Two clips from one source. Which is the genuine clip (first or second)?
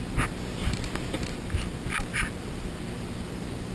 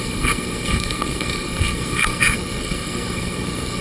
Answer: first